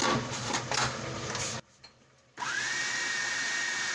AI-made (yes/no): no